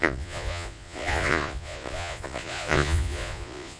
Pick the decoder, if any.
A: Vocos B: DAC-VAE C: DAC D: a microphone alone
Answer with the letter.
A